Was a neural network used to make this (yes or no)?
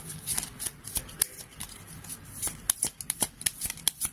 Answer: no